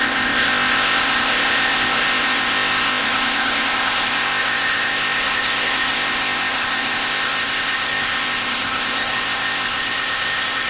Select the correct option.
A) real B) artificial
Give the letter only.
B